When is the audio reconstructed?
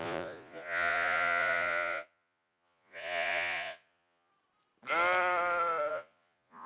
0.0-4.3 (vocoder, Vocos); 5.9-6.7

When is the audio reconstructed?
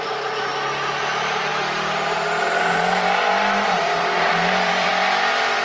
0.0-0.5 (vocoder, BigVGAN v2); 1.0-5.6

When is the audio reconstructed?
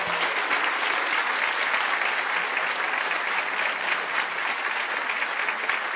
none